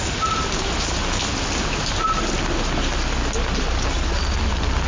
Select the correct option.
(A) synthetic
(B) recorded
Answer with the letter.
B